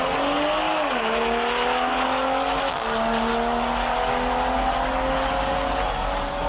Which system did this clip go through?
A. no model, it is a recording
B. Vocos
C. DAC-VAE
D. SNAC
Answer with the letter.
A